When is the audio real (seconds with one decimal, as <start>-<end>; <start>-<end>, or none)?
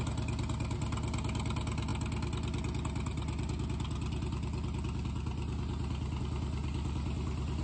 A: 0.0-7.6